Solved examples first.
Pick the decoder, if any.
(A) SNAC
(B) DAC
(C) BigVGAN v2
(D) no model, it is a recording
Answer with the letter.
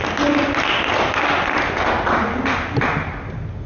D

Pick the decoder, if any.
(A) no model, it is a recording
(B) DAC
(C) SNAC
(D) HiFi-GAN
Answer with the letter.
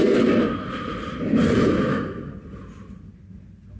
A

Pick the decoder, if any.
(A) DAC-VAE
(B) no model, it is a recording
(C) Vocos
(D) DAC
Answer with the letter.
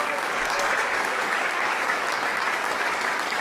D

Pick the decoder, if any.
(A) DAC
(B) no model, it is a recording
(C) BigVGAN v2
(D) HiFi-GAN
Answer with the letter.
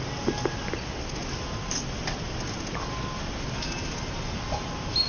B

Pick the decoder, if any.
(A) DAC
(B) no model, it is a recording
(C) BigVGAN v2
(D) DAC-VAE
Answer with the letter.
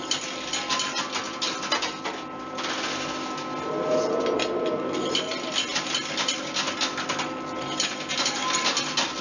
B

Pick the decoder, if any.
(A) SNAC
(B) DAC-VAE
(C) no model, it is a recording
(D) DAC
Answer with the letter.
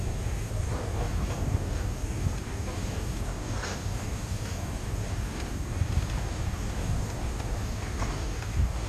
D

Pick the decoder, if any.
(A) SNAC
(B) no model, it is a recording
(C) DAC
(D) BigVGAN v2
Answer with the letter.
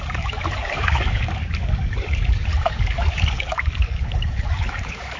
C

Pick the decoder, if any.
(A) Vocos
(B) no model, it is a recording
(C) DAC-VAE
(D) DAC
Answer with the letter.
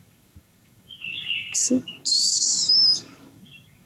D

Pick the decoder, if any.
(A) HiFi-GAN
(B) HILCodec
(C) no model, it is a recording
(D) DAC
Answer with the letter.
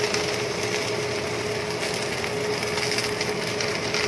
C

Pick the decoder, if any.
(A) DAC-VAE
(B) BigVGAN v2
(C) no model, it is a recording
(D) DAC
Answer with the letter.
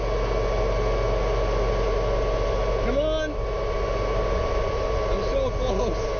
C